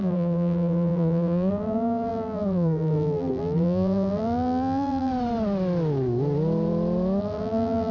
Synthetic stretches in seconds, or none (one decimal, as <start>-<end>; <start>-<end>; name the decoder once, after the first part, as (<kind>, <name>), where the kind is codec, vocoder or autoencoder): 0.0-5.1 (vocoder, BigVGAN v2); 7.2-7.9

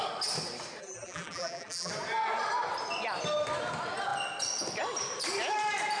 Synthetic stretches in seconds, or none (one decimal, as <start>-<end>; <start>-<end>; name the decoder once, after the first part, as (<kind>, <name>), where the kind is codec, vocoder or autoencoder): 0.8-1.9 (vocoder, BigVGAN v2)

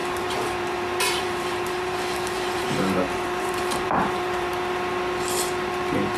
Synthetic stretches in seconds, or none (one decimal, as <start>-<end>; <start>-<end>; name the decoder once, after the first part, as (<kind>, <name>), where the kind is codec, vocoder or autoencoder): 0.0-4.5 (vocoder, BigVGAN v2)

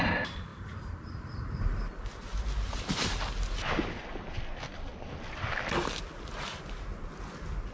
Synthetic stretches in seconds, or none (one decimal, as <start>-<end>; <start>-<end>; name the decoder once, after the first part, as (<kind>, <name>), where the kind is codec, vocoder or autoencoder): 0.5-2.4 (vocoder, BigVGAN v2)

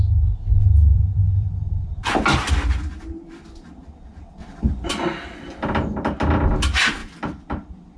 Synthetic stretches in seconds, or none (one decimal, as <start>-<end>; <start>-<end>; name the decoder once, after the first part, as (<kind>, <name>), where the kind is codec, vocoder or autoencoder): 0.9-2.5 (vocoder, BigVGAN v2); 4.4-4.9; 7.0-8.0